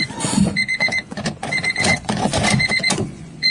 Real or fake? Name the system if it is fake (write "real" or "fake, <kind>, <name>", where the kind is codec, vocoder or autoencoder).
fake, vocoder, Vocos